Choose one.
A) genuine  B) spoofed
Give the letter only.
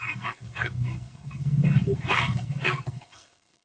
B